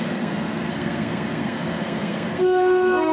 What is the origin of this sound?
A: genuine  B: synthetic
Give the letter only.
B